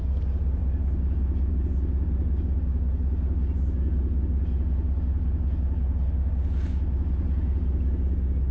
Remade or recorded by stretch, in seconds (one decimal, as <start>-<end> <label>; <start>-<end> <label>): 0.0-8.5 recorded